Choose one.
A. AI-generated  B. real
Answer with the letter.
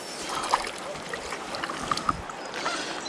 B